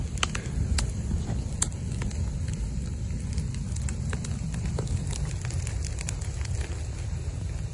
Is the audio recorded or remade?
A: recorded